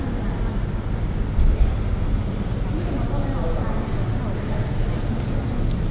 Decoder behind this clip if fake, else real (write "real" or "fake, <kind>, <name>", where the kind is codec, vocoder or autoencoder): real